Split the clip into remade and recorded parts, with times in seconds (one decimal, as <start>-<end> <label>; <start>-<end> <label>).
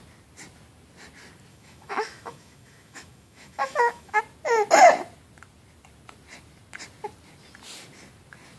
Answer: 0.0-1.5 recorded; 1.5-4.2 remade; 4.2-8.6 recorded